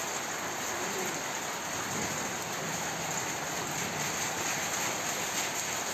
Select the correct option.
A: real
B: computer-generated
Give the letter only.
A